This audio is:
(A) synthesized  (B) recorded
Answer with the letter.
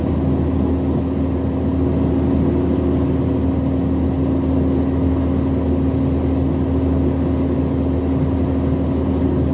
B